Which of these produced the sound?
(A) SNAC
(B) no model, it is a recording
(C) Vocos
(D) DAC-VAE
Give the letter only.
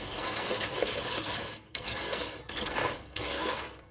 A